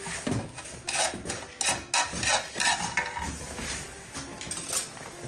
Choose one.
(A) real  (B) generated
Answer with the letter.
A